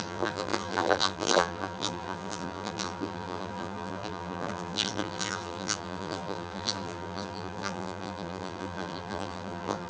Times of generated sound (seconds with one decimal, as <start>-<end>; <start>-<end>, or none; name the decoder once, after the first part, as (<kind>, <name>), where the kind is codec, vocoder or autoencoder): 0.0-9.9 (vocoder, BigVGAN v2)